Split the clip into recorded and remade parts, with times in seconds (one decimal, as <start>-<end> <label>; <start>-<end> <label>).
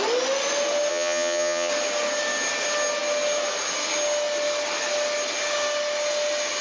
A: 0.0-0.9 recorded; 0.9-1.7 remade; 1.7-6.6 recorded